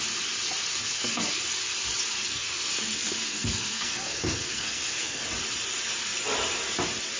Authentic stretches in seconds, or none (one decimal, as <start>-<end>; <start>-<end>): 0.0-0.8; 1.4-2.2; 5.2-7.2